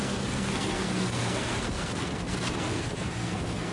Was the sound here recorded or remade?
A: remade